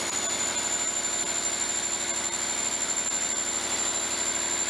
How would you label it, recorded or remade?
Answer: recorded